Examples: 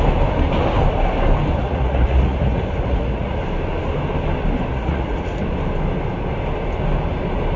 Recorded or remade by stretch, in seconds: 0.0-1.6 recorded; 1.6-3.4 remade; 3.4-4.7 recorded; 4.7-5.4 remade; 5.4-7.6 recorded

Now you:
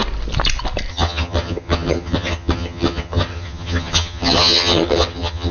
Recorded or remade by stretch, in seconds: 0.0-0.9 recorded; 0.9-5.5 remade

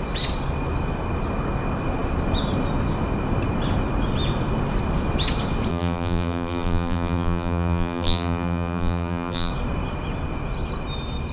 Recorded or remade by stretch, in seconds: 0.0-5.7 recorded; 5.7-9.5 remade; 9.5-11.3 recorded

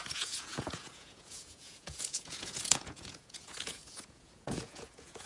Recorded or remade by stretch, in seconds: 0.0-5.3 remade

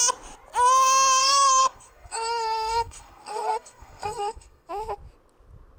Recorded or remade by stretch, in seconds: 0.0-1.2 recorded; 1.2-4.7 remade; 4.7-5.8 recorded

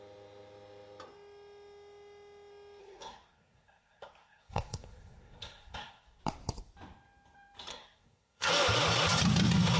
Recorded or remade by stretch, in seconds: 0.0-2.8 recorded; 2.8-6.2 remade; 6.2-7.7 recorded; 7.7-8.5 remade; 8.5-9.8 recorded

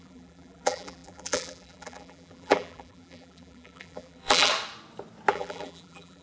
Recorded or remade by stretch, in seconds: 0.0-4.5 remade; 4.5-5.3 recorded; 5.3-6.2 remade